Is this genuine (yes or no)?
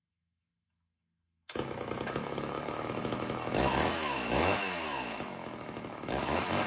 no